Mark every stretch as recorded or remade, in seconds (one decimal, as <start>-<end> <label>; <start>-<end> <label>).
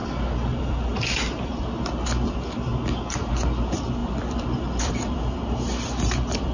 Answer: 0.0-2.7 remade; 2.7-3.3 recorded; 3.3-6.5 remade